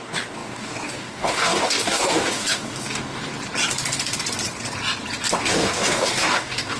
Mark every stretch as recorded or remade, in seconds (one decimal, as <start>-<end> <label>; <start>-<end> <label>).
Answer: 0.0-3.3 remade; 3.3-5.4 recorded; 5.4-6.8 remade